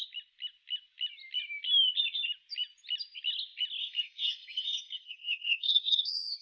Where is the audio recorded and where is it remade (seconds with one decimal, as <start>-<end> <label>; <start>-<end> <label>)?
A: 0.0-3.8 recorded; 3.8-6.4 remade